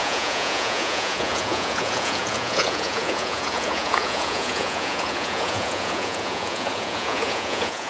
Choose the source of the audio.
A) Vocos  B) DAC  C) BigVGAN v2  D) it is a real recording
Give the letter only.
A